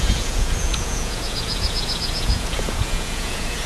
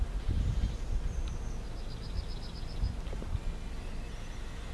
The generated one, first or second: first